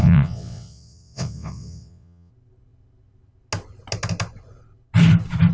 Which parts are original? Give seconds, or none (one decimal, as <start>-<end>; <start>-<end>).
2.3-5.5